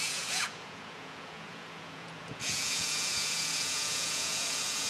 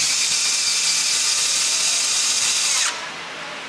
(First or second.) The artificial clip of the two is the first